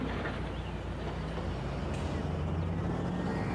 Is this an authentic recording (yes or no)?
yes